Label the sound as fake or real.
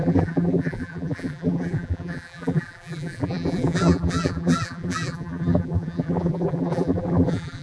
fake